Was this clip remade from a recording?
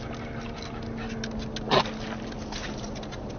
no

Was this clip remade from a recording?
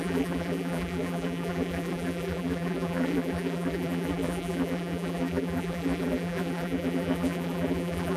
yes